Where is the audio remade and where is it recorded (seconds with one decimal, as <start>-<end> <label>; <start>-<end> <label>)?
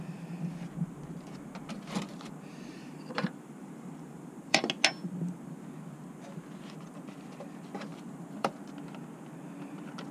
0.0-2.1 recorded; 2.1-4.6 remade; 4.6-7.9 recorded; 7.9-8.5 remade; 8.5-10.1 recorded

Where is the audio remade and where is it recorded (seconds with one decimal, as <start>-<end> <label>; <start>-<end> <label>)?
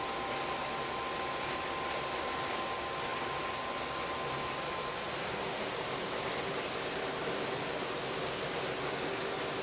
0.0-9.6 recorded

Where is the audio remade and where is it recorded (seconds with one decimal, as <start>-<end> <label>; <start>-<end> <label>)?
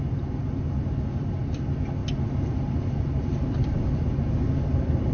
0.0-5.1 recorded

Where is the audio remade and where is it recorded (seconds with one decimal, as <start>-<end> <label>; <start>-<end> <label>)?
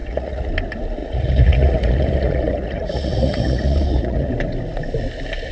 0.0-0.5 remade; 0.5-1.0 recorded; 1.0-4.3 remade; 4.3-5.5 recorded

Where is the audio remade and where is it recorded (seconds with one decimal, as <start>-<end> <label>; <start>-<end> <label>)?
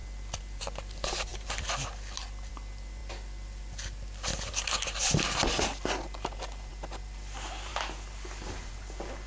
0.0-9.3 recorded